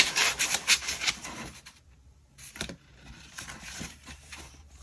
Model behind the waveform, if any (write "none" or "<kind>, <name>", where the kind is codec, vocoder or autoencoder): vocoder, BigVGAN v2